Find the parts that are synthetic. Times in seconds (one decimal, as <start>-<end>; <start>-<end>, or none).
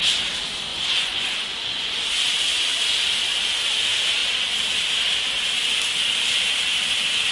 0.7-2.0